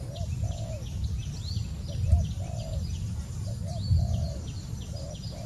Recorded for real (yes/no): yes